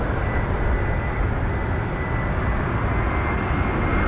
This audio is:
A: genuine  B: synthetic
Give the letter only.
A